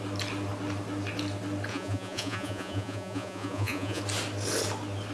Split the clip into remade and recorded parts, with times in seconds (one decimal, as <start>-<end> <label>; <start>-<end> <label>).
0.0-1.7 recorded; 1.7-4.0 remade; 4.0-5.1 recorded